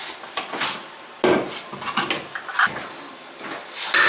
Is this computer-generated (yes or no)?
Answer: no